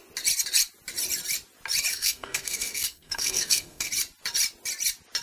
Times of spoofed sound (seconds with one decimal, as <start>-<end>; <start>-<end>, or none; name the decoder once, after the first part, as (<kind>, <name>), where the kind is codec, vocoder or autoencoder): 1.9-3.9 (codec, SNAC)